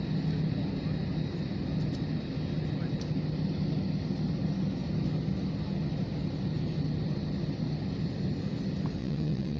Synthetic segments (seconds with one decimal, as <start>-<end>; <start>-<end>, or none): 9.0-9.6